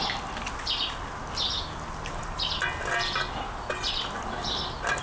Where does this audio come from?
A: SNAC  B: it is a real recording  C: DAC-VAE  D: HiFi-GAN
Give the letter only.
B